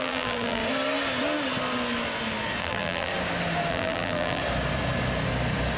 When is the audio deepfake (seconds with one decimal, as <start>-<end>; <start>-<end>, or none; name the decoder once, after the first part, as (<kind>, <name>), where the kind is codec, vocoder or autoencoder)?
0.0-0.6 (vocoder, BigVGAN v2); 2.6-3.1; 3.7-4.4